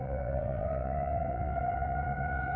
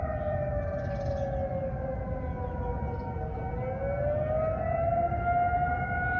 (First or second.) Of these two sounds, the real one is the second